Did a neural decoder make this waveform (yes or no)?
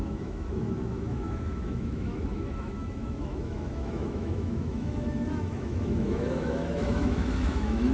yes